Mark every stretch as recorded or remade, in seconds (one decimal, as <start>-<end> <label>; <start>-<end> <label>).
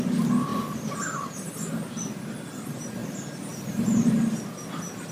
0.0-5.1 recorded